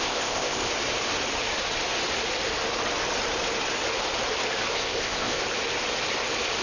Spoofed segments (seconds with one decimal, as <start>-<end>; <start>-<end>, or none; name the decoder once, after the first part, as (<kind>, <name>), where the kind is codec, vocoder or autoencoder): 0.0-0.7 (codec, ZipCodec); 4.7-5.4